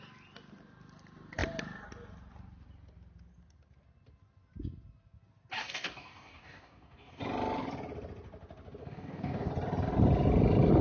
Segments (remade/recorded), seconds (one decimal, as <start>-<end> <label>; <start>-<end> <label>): 0.0-5.6 recorded; 5.6-7.2 remade; 7.2-8.8 recorded; 8.8-9.5 remade; 9.5-10.8 recorded